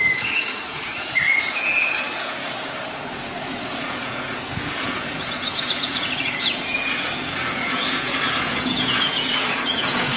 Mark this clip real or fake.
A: fake